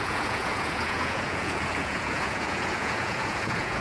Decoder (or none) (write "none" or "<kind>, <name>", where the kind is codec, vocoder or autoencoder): vocoder, Vocos